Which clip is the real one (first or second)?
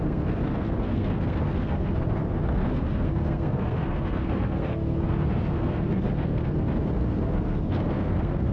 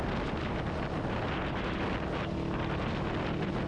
second